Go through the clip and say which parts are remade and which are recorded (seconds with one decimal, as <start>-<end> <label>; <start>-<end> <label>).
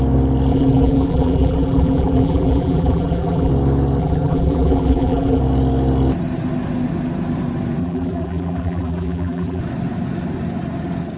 0.0-0.5 recorded; 0.5-3.5 remade; 3.5-4.0 recorded; 4.0-5.4 remade; 5.4-7.8 recorded; 7.8-9.6 remade; 9.6-11.2 recorded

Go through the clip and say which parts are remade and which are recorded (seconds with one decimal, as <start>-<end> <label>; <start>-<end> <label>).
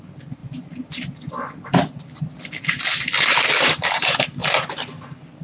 0.0-5.4 recorded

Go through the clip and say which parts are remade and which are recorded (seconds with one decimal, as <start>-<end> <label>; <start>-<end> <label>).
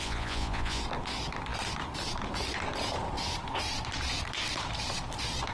0.0-0.8 remade; 0.8-5.5 recorded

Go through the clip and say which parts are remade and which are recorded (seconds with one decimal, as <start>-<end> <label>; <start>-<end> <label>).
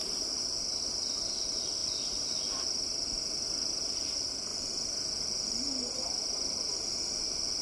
0.0-7.6 recorded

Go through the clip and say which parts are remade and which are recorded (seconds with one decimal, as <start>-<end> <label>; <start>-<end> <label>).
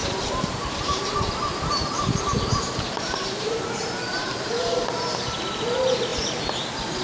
0.0-1.3 remade; 1.3-1.8 recorded; 1.8-4.5 remade; 4.5-7.0 recorded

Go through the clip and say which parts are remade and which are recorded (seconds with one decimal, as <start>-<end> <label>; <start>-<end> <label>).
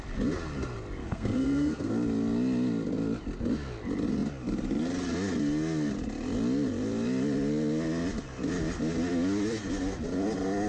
0.0-1.0 recorded; 1.0-1.9 remade; 1.9-10.7 recorded